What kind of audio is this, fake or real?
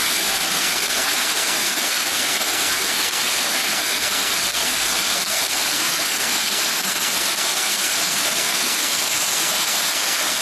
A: fake